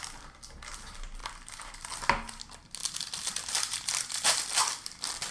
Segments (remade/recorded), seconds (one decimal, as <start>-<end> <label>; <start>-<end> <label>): 0.0-2.8 recorded; 2.8-4.6 remade; 4.6-5.3 recorded